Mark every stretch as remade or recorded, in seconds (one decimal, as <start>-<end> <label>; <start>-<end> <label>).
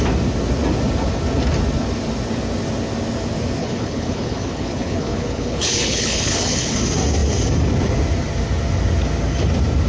0.0-3.6 recorded; 3.6-6.8 remade; 6.8-9.9 recorded